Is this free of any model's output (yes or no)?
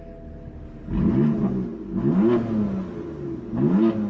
yes